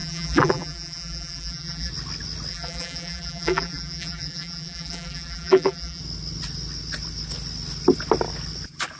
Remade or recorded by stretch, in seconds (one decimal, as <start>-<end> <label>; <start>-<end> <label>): 0.0-1.9 remade; 1.9-2.5 recorded; 2.5-6.0 remade; 6.0-9.0 recorded